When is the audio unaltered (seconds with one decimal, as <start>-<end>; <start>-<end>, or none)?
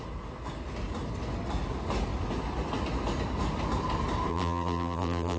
0.0-4.3